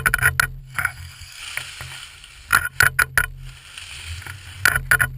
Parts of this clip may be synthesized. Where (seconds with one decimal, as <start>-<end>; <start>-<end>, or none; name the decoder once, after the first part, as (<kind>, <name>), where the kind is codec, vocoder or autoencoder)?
0.6-1.4 (codec, SNAC)

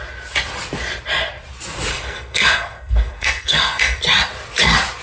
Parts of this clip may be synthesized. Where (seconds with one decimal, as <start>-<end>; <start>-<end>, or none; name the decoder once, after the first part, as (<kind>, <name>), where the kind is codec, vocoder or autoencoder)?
1.9-4.0 (codec, SNAC)

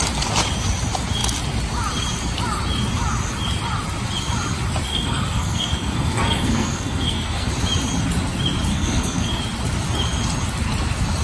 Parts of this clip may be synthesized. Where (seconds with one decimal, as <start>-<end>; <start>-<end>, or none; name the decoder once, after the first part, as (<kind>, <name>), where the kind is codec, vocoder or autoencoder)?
4.9-7.5 (codec, SNAC); 8.7-9.4

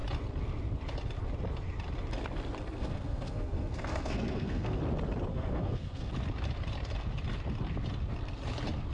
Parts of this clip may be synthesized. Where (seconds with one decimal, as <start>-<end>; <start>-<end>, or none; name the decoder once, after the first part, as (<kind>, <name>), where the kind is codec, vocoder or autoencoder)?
2.8-4.8 (codec, SNAC); 5.3-6.1

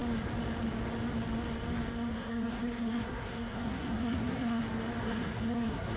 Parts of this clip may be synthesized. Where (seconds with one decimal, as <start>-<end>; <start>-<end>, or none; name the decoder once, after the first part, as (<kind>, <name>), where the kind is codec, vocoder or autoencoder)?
2.1-4.6 (codec, SNAC); 5.0-6.0

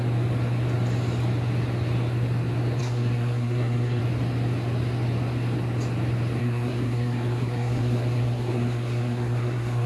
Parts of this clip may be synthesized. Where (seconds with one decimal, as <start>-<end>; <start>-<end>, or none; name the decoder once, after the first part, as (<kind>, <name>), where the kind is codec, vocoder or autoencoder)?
2.8-4.0 (codec, SNAC); 6.4-9.9

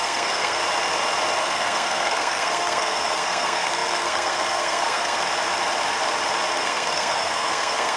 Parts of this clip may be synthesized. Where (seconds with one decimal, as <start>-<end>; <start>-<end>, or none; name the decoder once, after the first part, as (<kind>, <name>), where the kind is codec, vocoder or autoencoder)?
0.0-0.6 (codec, SNAC); 1.4-5.2; 6.5-8.0